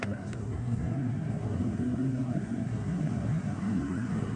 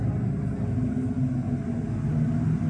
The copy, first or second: first